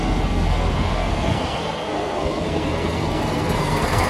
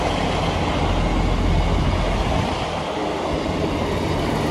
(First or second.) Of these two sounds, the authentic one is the second